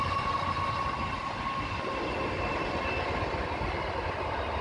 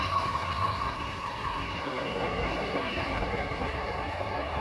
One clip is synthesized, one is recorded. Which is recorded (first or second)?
first